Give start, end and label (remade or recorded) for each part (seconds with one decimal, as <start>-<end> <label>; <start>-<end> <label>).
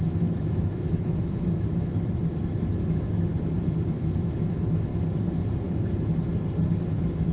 0.0-2.2 remade; 2.2-2.8 recorded; 2.8-3.3 remade; 3.3-3.9 recorded; 3.9-4.9 remade; 4.9-6.7 recorded; 6.7-7.3 remade